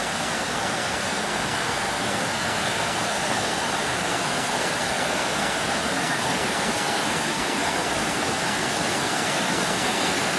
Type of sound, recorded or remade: remade